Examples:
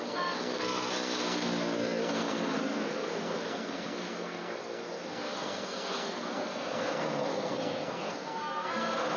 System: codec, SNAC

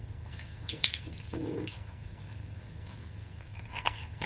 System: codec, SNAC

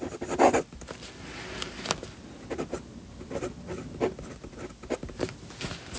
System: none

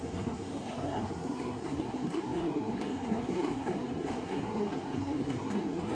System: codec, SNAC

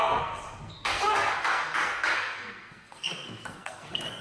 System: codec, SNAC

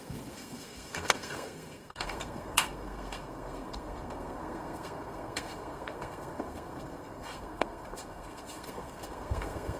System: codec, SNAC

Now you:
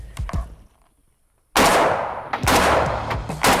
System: none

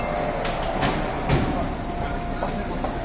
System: none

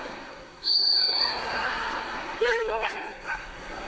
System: codec, SNAC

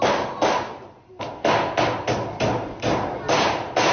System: none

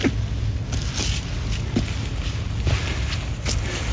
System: none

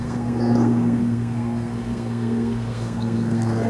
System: codec, SNAC